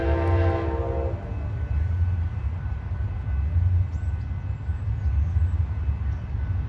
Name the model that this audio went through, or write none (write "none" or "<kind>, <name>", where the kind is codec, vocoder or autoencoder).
none